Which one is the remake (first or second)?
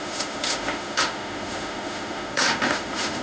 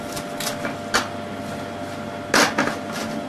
first